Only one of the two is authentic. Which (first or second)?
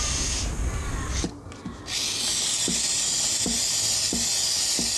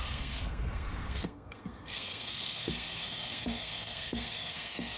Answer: first